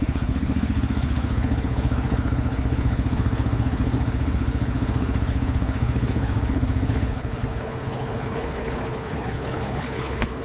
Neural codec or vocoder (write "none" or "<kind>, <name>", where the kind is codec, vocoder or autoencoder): codec, HILCodec